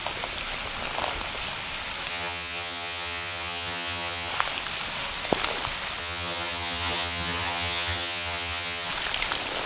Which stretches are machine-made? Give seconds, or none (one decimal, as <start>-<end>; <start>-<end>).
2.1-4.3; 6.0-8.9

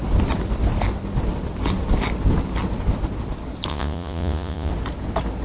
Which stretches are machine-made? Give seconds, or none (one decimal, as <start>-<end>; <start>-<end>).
3.7-4.7

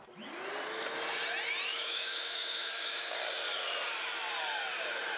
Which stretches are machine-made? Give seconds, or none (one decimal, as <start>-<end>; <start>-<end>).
1.7-3.1

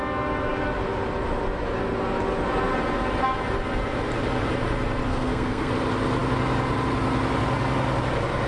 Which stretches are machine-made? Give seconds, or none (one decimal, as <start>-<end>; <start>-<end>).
5.1-5.7

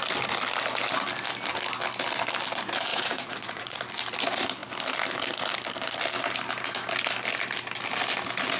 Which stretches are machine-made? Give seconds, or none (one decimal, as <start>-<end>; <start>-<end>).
2.9-3.8

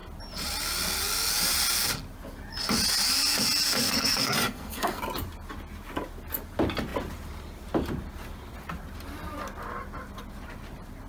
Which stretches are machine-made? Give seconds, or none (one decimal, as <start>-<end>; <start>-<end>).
3.8-5.0

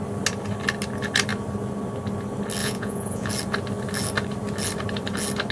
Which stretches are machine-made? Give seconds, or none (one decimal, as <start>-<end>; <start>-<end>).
2.6-3.3

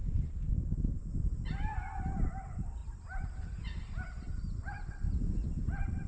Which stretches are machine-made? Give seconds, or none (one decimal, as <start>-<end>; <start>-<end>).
none